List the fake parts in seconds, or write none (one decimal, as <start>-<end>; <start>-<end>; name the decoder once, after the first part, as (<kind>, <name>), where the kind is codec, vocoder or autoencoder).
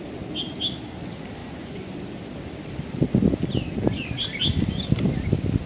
1.4-1.9 (vocoder, Vocos)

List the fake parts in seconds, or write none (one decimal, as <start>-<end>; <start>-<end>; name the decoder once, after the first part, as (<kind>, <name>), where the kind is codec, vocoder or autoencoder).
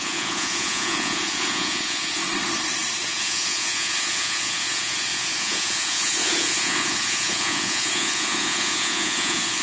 0.0-2.2 (vocoder, Vocos); 3.1-9.6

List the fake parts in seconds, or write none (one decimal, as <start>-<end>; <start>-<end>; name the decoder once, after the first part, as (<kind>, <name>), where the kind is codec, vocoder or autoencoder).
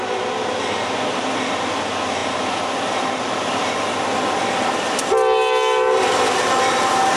none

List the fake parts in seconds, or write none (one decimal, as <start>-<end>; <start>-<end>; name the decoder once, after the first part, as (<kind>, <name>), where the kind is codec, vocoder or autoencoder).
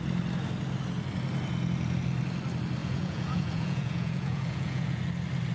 2.8-5.0 (vocoder, Vocos)